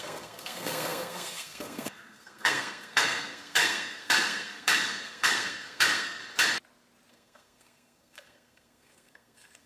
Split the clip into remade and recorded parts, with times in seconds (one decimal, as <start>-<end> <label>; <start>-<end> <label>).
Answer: 0.0-6.2 remade; 6.2-7.1 recorded; 7.1-9.7 remade